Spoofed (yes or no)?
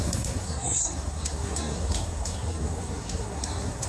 yes